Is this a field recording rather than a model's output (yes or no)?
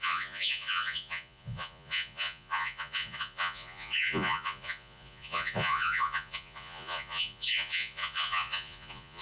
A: no